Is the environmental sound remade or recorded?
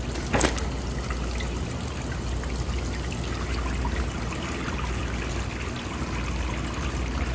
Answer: recorded